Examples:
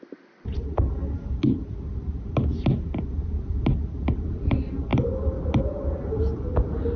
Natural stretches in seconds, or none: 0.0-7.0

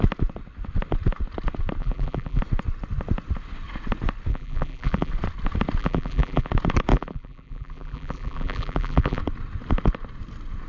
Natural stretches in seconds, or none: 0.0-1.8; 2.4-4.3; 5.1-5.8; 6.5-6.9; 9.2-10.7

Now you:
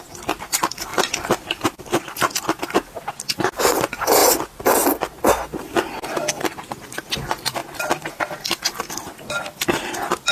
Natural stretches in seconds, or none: 4.2-6.9

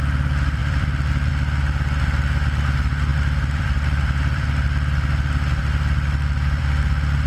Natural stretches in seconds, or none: 0.0-0.6; 1.3-3.1; 5.1-5.6; 6.6-7.3

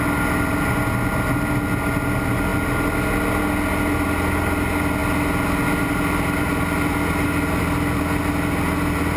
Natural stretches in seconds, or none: 0.0-9.2